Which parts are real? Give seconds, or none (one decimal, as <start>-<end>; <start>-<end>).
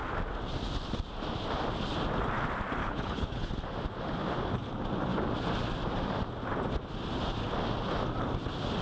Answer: 0.0-2.8; 3.5-8.8